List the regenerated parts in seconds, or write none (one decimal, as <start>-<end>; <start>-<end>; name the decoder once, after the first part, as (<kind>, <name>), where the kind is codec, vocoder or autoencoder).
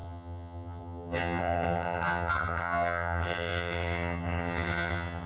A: 0.0-5.3 (vocoder, HiFi-GAN)